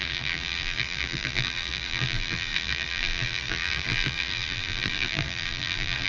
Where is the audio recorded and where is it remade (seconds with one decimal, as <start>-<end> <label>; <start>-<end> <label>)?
0.0-6.1 remade